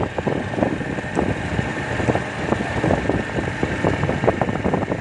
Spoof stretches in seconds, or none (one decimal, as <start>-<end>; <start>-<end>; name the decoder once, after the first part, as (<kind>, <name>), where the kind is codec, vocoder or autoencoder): none